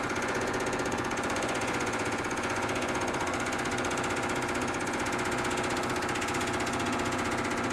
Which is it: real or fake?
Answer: fake